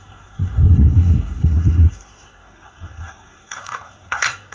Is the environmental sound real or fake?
fake